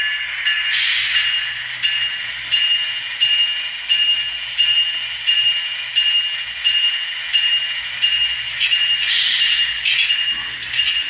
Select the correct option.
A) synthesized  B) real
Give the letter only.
B